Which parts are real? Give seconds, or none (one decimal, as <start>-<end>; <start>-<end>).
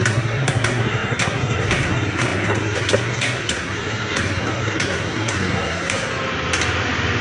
6.1-7.2